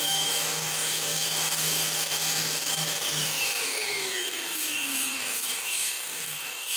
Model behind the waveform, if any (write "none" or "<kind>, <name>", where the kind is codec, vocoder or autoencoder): codec, DAC